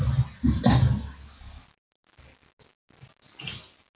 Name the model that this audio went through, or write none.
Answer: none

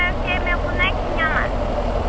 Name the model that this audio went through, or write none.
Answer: none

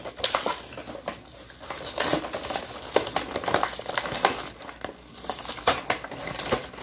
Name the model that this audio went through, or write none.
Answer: none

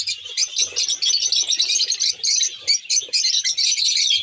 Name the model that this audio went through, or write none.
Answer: none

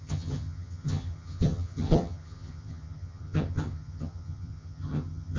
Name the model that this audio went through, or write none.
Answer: vocoder, HiFi-GAN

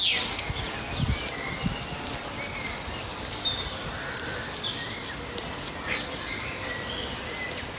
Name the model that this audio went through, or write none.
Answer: none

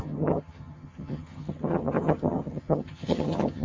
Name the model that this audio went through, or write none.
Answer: vocoder, HiFi-GAN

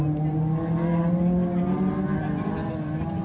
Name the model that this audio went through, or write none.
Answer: none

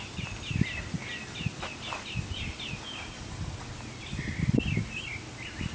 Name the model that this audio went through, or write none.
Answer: none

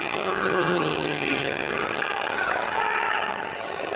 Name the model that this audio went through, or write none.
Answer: vocoder, HiFi-GAN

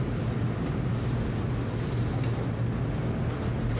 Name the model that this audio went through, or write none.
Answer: none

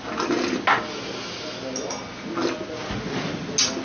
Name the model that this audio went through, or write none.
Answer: none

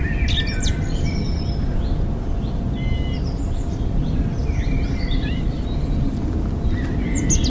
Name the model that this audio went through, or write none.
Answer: none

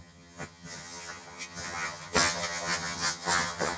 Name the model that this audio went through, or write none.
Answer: vocoder, HiFi-GAN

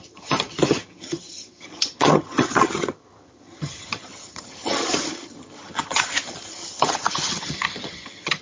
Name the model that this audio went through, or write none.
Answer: vocoder, HiFi-GAN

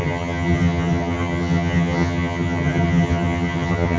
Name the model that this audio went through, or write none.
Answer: vocoder, HiFi-GAN